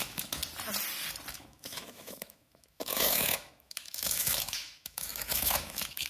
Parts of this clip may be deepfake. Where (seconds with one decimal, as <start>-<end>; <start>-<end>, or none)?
0.0-0.4; 1.3-6.1

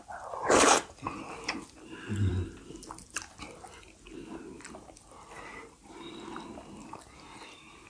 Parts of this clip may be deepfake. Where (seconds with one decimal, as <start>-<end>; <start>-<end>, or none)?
none

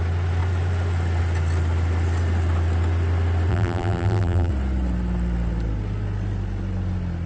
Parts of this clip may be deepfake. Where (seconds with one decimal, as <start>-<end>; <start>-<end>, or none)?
3.5-4.5